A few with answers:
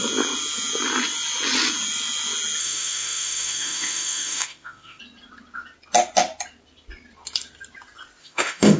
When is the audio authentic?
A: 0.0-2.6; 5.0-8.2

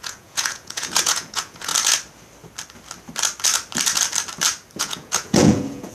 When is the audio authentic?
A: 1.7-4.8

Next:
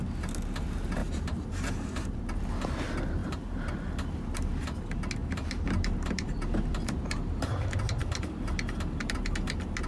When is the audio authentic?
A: 0.0-1.0; 2.2-3.2; 3.7-5.2; 8.9-9.9

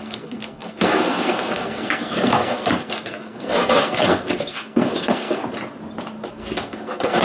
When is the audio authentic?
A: 5.4-6.3